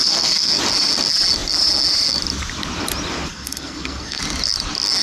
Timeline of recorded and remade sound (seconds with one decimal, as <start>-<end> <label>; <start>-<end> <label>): 0.0-0.6 remade; 0.6-3.3 recorded; 3.3-4.2 remade; 4.2-5.0 recorded